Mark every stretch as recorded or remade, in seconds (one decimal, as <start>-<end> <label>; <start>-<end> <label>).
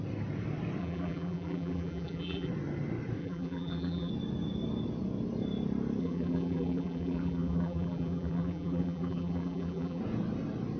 0.0-0.8 recorded; 0.8-2.5 remade; 2.5-3.2 recorded; 3.2-4.1 remade; 4.1-6.0 recorded; 6.0-10.0 remade; 10.0-10.8 recorded